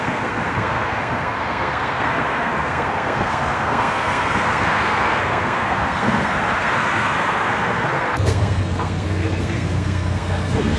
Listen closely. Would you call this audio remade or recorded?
remade